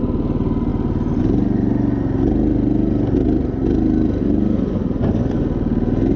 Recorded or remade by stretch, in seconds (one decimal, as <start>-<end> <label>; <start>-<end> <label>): 0.0-6.2 recorded